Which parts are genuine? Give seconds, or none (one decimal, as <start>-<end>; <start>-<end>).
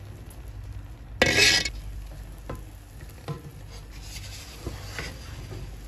0.0-5.9